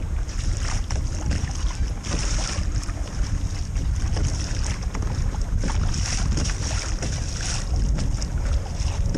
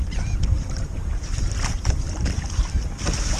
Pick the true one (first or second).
first